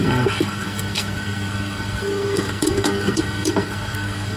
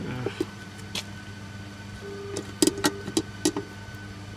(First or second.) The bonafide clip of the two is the second